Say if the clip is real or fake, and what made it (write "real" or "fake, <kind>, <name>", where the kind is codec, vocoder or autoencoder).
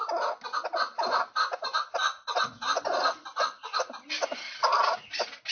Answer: real